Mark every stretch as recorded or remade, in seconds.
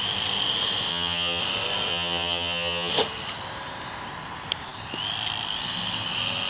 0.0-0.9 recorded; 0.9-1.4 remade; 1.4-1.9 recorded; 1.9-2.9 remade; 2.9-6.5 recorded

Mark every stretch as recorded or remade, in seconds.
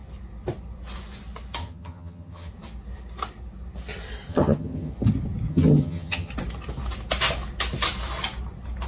0.0-1.6 recorded; 1.6-2.5 remade; 2.5-4.3 recorded; 4.3-4.9 remade; 4.9-5.5 recorded; 5.5-6.3 remade; 6.3-8.9 recorded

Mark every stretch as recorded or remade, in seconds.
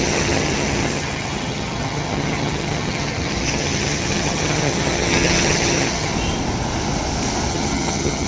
0.0-6.1 remade; 6.1-7.5 recorded; 7.5-8.3 remade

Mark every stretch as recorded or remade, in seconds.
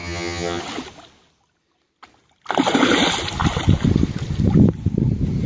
0.0-0.6 remade; 0.6-5.5 recorded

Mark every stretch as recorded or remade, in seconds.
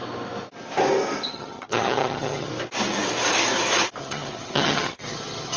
0.0-1.3 recorded; 1.3-2.5 remade; 2.5-4.0 recorded; 4.0-5.6 remade